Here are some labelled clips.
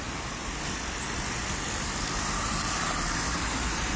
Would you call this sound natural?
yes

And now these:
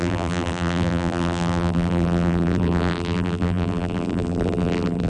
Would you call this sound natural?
no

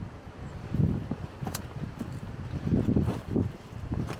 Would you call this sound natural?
yes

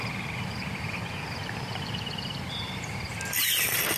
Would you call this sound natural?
no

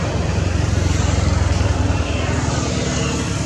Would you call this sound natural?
yes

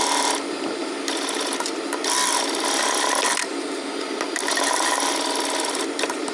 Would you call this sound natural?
yes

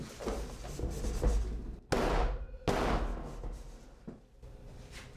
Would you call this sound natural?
yes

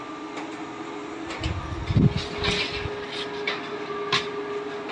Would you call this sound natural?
yes